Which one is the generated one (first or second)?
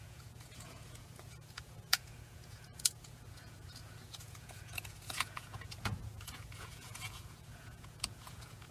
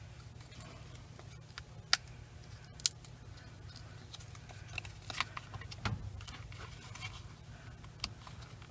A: first